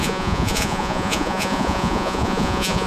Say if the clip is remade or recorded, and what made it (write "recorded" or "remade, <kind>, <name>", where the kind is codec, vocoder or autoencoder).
remade, vocoder, Vocos